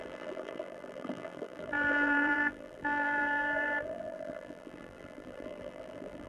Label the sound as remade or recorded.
remade